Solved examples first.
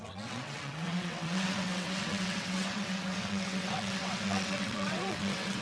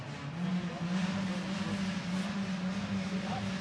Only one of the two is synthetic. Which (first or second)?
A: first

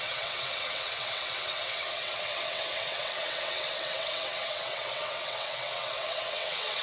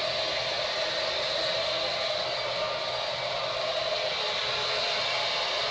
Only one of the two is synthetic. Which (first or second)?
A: first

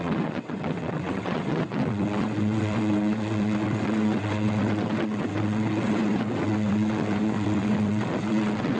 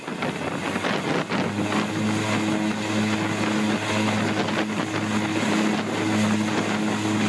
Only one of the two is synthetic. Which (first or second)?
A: first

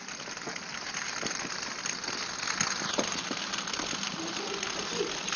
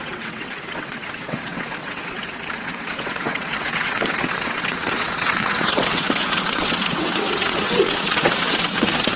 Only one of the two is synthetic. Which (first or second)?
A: second